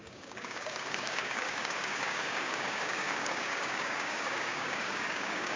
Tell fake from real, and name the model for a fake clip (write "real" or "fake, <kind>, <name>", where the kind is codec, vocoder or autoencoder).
fake, codec, DAC